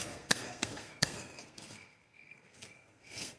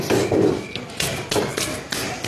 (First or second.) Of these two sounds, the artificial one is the first